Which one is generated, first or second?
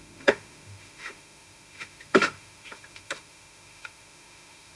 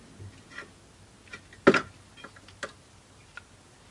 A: first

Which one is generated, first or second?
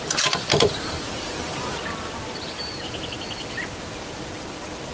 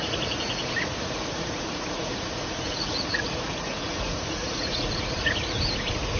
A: second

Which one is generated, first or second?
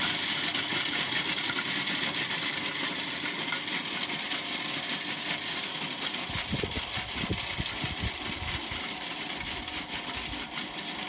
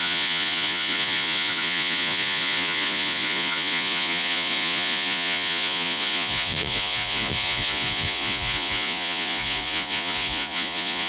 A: second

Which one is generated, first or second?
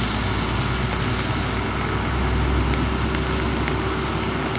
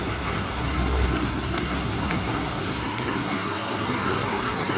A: second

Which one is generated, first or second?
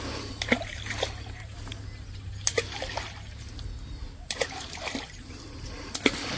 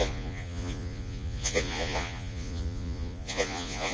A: second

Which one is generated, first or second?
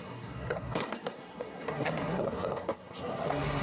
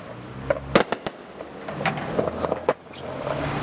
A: first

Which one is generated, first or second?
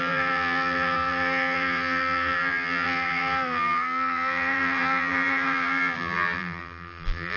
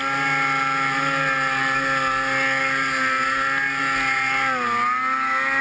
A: first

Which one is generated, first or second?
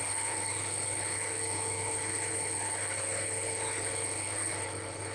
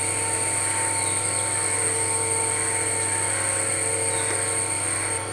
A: first